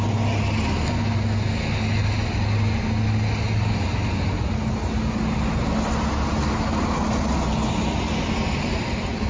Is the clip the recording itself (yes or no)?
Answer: yes